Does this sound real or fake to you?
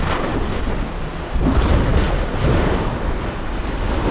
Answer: real